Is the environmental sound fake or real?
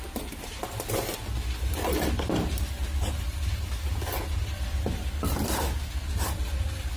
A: real